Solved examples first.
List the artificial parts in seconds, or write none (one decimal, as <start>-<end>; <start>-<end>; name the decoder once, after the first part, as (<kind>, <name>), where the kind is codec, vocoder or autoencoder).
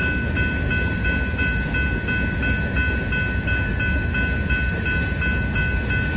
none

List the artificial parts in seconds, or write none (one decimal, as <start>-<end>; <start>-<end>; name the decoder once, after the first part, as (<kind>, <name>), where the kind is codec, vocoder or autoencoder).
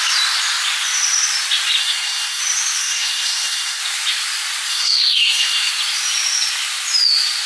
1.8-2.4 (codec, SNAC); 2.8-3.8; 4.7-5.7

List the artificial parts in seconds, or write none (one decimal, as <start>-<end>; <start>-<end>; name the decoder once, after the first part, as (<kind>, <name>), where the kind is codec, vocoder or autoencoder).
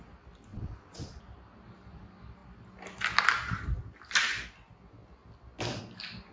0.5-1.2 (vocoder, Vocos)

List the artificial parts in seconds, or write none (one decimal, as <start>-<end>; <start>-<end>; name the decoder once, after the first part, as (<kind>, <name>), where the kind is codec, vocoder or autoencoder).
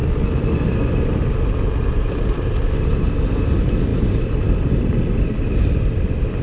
none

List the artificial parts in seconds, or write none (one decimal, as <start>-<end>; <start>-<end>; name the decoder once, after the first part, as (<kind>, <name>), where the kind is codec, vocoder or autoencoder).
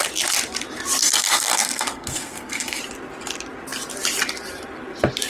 1.0-2.8 (codec, SNAC)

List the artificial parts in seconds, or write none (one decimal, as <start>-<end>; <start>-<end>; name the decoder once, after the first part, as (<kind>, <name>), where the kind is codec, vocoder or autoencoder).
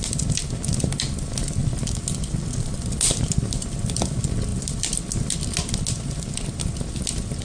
none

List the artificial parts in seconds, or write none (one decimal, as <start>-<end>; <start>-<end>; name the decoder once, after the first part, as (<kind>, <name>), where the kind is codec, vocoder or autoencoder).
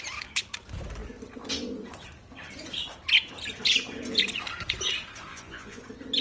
5.3-5.8 (vocoder, Vocos)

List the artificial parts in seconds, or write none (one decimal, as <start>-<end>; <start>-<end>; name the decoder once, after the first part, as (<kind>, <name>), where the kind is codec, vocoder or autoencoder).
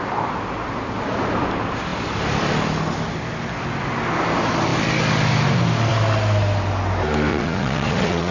7.3-8.3 (vocoder, Vocos)